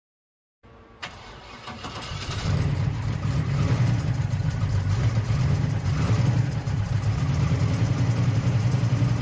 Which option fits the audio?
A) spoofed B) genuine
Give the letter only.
A